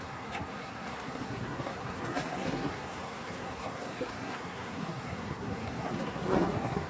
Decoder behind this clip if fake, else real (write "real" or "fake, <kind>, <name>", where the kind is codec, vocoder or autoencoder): fake, codec, SNAC